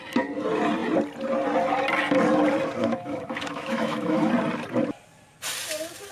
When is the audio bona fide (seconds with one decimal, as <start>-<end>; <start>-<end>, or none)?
0.0-2.8; 4.3-6.1